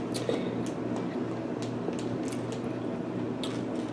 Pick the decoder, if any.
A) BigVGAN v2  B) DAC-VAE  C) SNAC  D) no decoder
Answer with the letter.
D